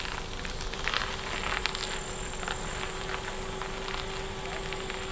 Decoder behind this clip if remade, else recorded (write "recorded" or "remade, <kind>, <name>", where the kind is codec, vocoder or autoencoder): recorded